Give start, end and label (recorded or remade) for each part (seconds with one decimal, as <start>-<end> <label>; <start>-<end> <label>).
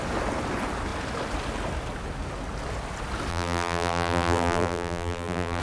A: 0.0-3.3 recorded; 3.3-5.6 remade